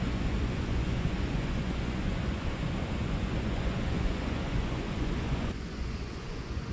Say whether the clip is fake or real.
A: fake